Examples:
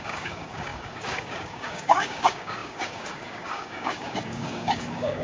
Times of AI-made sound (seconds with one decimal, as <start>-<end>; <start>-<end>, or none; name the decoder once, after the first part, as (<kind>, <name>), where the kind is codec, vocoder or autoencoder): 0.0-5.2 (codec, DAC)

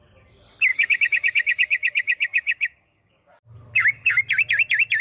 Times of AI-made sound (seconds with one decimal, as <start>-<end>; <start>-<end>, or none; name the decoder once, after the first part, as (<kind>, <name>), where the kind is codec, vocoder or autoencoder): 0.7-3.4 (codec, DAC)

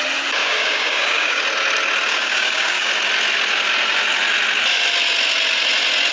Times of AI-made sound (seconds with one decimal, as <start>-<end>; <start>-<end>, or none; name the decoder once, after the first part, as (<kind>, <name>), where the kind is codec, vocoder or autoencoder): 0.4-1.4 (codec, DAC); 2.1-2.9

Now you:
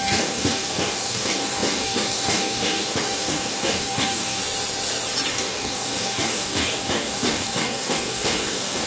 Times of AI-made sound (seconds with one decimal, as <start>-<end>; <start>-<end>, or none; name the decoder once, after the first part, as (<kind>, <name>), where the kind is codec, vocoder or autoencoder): 0.0-4.4 (codec, DAC); 5.3-8.9

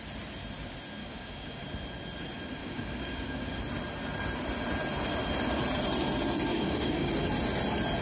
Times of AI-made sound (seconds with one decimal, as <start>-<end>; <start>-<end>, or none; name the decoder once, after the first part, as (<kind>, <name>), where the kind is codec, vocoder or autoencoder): 1.0-1.6 (codec, DAC); 2.6-3.6; 6.5-7.1

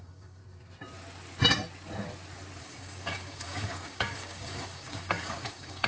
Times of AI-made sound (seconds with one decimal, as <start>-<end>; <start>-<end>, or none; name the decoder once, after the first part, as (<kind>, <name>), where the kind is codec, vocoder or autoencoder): 0.0-0.4 (codec, DAC); 2.6-5.9

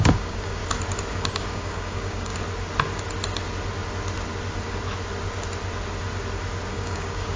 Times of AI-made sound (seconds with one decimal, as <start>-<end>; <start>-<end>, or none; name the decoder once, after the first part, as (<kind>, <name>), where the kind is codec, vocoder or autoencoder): 0.0-0.6 (codec, DAC); 1.1-2.3; 6.7-7.4